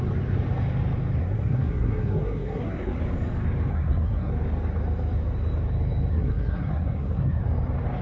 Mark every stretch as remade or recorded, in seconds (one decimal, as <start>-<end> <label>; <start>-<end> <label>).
0.0-1.2 recorded; 1.2-3.0 remade; 3.0-3.7 recorded; 3.7-4.3 remade; 4.3-6.1 recorded; 6.1-7.4 remade; 7.4-8.0 recorded